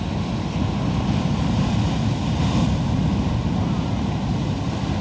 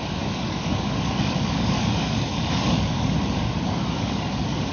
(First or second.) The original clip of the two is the first